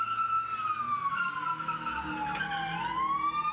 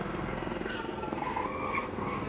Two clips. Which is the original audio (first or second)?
first